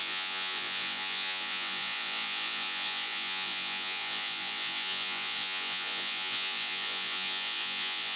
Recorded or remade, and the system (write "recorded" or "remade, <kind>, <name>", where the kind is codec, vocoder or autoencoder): remade, vocoder, Vocos